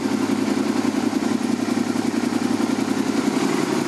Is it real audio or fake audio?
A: real